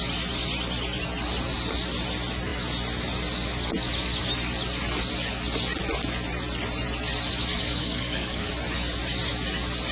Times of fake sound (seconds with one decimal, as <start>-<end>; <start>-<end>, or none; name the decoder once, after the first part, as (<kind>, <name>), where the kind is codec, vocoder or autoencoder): 7.5-8.5 (codec, DAC)